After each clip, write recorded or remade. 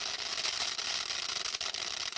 recorded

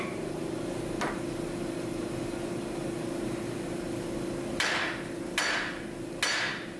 recorded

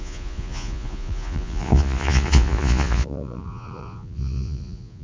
remade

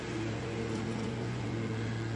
remade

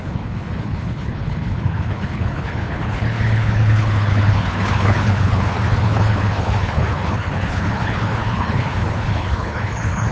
remade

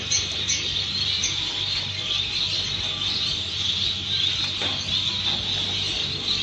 recorded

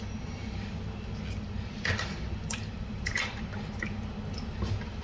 recorded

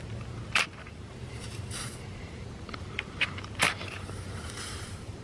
remade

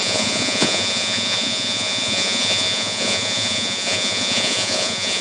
remade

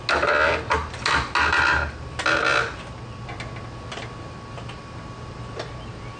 recorded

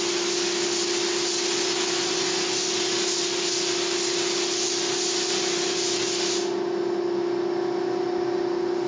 recorded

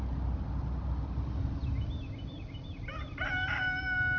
recorded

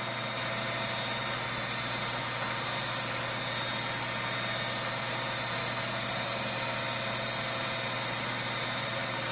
recorded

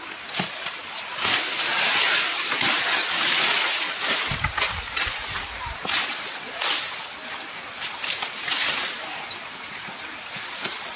recorded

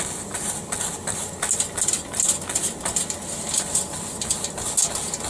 recorded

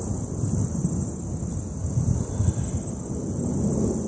recorded